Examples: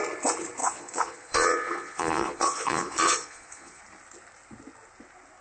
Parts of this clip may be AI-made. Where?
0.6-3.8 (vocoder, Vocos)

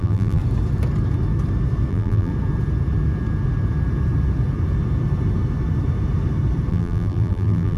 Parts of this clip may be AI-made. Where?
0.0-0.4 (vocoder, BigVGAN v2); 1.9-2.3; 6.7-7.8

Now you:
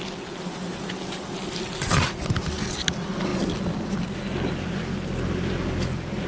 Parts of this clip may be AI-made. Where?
none

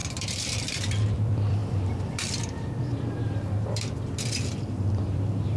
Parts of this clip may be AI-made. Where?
0.0-5.6 (vocoder, BigVGAN v2)

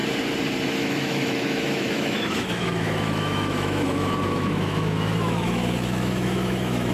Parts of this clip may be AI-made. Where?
0.7-6.9 (autoencoder, DAC-VAE)

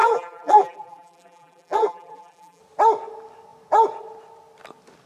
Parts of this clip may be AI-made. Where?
0.0-2.6 (vocoder, BigVGAN v2)